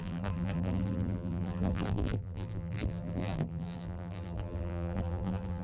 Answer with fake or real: fake